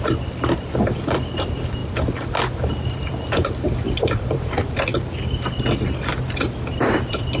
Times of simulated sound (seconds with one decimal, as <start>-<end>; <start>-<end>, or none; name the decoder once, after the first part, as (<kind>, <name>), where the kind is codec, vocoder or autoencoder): 0.0-1.8 (vocoder, BigVGAN v2); 2.7-4.9; 6.1-7.4